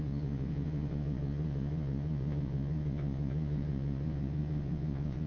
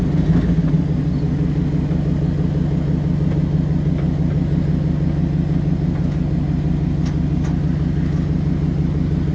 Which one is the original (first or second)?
second